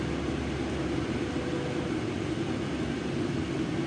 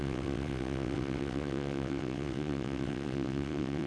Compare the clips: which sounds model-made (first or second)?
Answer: second